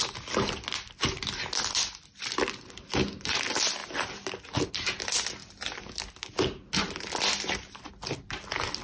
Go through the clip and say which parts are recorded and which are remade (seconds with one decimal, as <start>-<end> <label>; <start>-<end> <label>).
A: 0.0-8.8 recorded